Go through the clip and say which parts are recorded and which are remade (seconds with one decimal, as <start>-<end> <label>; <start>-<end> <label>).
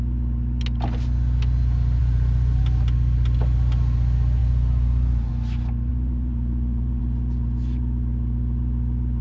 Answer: 0.0-2.0 recorded; 2.0-2.6 remade; 2.6-4.4 recorded; 4.4-5.3 remade; 5.3-5.9 recorded; 5.9-7.0 remade; 7.0-9.2 recorded